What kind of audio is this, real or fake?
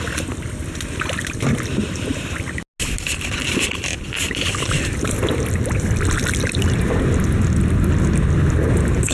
real